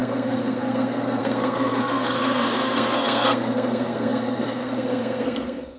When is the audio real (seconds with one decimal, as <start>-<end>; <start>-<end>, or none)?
none